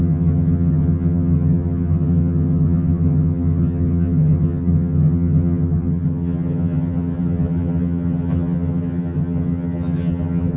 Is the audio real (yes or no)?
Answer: no